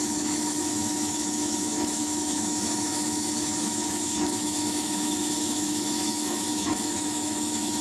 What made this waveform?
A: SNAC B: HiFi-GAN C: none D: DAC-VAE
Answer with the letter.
D